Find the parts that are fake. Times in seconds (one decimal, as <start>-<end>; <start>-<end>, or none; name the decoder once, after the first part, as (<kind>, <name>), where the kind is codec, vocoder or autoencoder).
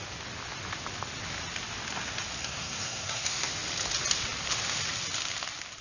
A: 2.4-3.5 (codec, SNAC)